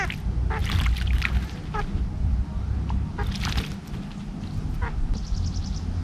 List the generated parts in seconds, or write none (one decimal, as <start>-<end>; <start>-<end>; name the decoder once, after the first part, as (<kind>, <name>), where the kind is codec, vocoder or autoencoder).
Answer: none

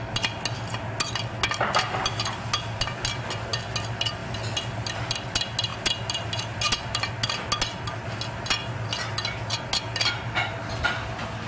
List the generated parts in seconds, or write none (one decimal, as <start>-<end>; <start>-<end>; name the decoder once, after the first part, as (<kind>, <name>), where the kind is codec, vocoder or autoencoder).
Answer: none

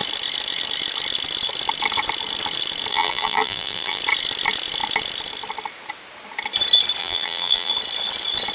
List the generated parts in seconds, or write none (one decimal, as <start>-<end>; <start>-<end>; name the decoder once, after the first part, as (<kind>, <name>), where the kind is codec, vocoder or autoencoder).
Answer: 2.9-4.0 (vocoder, BigVGAN v2); 7.0-7.7

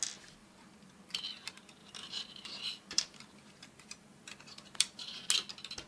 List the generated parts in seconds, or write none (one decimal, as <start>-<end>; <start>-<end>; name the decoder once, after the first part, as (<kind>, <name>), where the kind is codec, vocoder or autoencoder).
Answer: 0.4-1.2 (vocoder, BigVGAN v2); 1.8-5.3

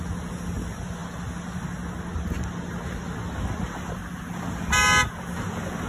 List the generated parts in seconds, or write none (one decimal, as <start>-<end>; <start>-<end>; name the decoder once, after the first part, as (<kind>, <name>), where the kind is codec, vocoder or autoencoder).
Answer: none

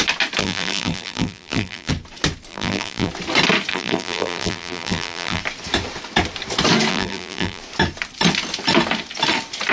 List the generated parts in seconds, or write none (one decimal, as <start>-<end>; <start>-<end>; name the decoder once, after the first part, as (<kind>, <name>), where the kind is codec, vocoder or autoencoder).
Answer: 0.4-1.9 (vocoder, BigVGAN v2); 2.5-3.1; 3.7-5.4; 6.9-7.6